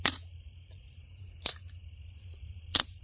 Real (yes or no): no